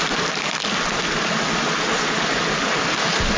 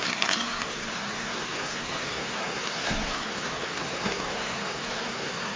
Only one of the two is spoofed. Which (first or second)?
second